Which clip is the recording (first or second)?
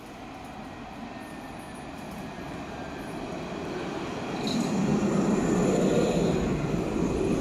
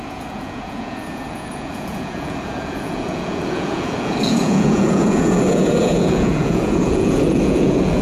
first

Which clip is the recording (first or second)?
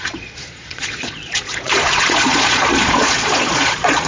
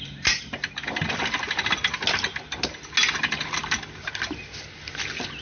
second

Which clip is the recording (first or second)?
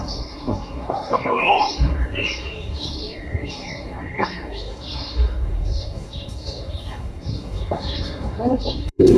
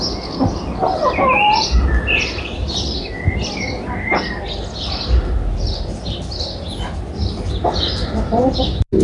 second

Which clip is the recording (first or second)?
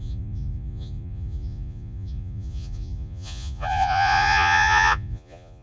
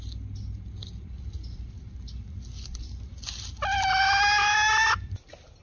second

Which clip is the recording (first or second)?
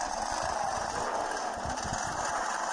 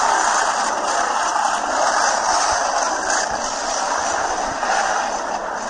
first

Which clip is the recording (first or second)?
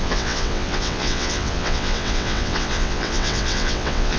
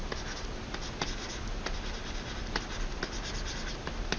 second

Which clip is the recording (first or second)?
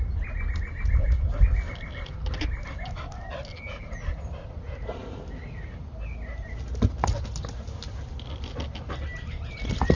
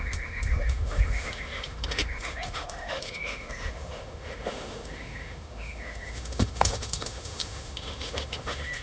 first